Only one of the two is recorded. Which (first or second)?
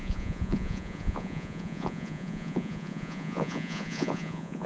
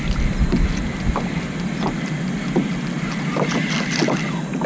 second